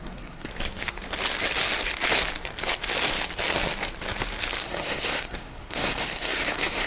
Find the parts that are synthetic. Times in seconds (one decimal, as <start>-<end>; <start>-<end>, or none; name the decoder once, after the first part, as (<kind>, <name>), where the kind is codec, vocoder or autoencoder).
0.0-0.5 (codec, SNAC); 4.6-6.9